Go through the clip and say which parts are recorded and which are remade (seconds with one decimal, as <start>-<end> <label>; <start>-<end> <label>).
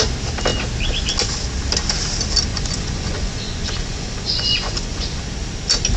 0.0-2.5 recorded; 2.5-5.2 remade; 5.2-6.0 recorded